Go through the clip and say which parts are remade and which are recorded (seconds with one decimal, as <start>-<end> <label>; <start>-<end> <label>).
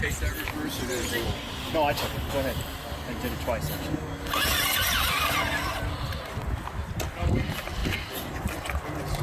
0.0-9.2 recorded